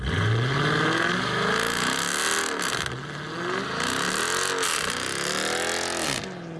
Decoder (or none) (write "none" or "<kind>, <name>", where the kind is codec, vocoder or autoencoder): none